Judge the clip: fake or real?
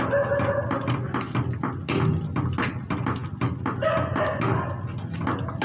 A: real